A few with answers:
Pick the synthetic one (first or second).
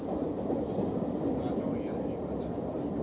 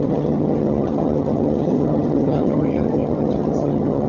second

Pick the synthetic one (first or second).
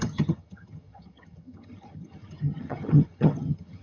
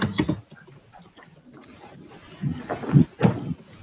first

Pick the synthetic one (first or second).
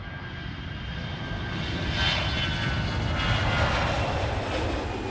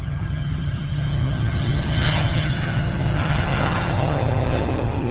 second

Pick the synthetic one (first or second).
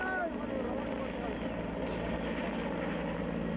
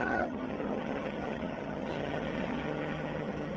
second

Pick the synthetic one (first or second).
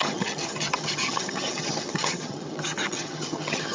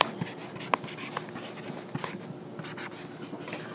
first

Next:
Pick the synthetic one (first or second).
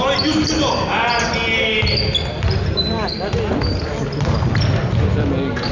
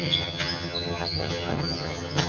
second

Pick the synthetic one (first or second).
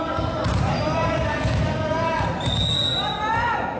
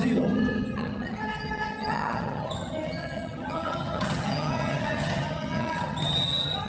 second